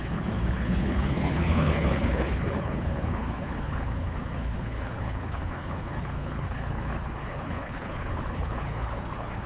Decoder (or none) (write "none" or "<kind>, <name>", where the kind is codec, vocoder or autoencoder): codec, HILCodec